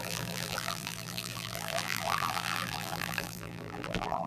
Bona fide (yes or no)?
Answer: no